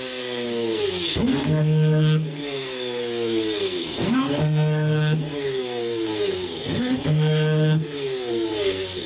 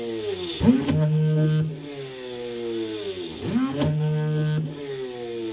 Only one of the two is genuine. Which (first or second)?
second